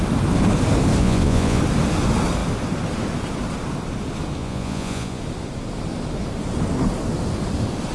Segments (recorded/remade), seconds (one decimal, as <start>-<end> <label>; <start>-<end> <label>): 0.0-1.0 recorded; 1.0-1.6 remade; 1.6-4.4 recorded; 4.4-5.2 remade; 5.2-7.9 recorded